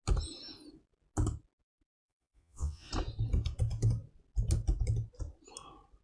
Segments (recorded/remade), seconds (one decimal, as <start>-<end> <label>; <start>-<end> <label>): 0.0-2.0 recorded; 2.0-2.9 remade; 2.9-6.0 recorded